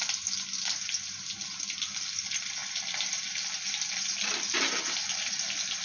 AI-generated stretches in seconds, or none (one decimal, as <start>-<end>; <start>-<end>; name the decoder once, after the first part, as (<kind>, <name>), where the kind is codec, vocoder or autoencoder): none